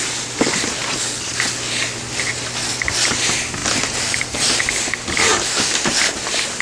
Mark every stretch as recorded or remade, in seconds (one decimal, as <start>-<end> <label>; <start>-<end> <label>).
0.0-6.6 recorded